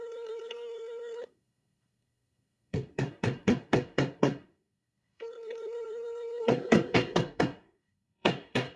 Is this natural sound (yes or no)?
no